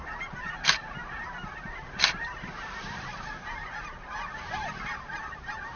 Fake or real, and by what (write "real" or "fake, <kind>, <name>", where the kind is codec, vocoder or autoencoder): fake, vocoder, BigVGAN v2